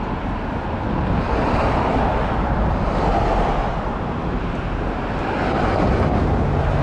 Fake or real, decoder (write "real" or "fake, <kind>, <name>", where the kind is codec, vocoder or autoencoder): real